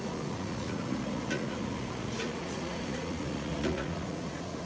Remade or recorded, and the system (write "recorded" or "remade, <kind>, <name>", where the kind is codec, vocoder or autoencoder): remade, vocoder, Vocos